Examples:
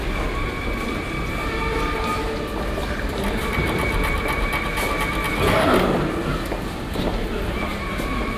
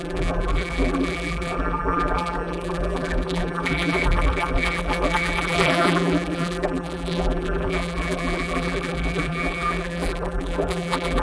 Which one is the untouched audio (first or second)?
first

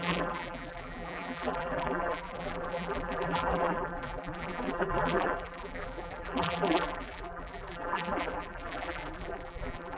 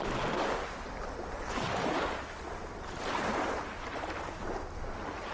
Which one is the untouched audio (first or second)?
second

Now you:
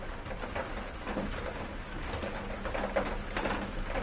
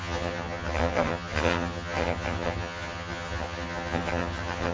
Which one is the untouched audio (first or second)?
first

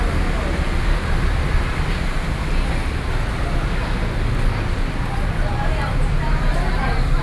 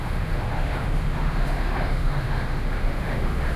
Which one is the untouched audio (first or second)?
first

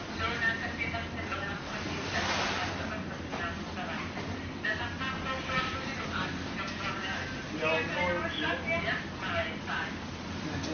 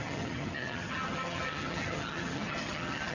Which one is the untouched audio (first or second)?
first